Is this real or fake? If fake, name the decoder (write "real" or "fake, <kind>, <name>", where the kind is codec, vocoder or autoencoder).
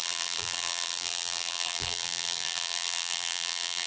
fake, vocoder, BigVGAN v2